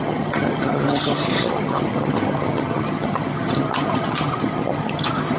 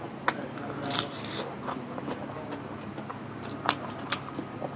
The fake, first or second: first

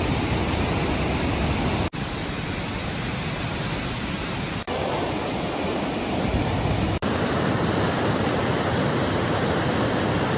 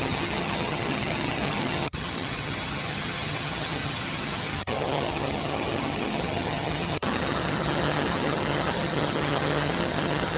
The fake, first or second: second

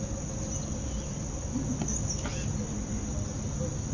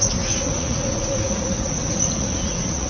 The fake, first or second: second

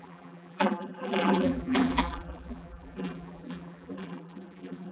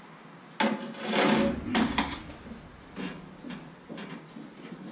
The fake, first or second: first